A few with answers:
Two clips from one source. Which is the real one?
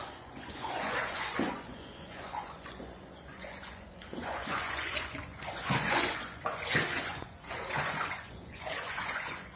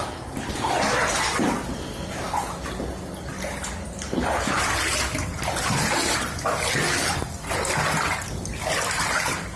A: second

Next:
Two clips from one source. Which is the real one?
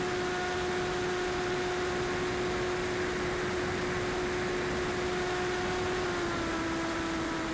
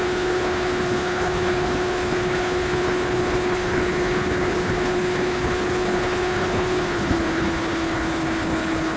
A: first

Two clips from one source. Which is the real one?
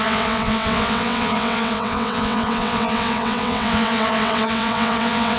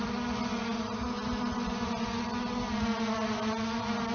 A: second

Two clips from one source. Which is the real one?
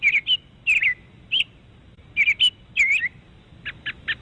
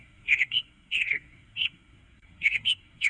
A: first